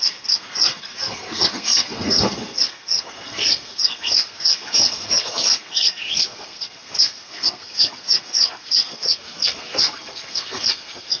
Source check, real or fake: fake